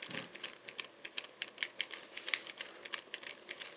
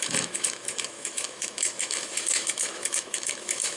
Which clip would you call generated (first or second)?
second